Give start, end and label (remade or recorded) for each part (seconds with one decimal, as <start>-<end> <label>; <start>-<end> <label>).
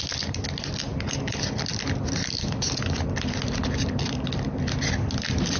0.0-0.9 recorded; 0.9-3.9 remade; 3.9-5.6 recorded